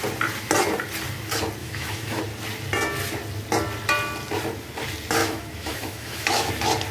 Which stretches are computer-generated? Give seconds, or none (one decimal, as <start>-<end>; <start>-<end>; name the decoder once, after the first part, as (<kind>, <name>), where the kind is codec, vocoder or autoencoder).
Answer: 1.6-2.2 (autoencoder, DAC-VAE); 5.2-6.5